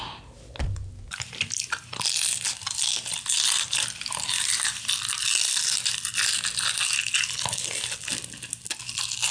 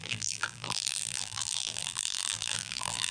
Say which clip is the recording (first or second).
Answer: first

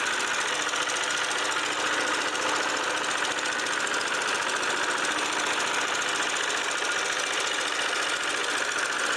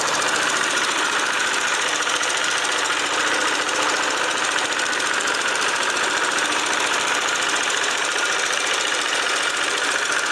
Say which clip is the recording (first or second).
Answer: first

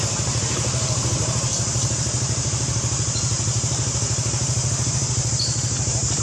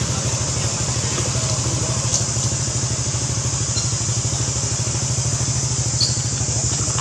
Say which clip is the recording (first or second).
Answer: second